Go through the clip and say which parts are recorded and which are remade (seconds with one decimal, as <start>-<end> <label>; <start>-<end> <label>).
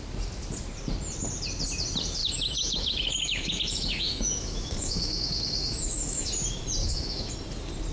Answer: 0.0-2.2 recorded; 2.2-6.3 remade; 6.3-6.8 recorded; 6.8-7.3 remade; 7.3-7.9 recorded